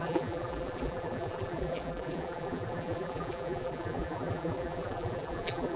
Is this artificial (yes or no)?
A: yes